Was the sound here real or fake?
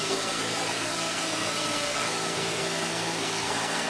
fake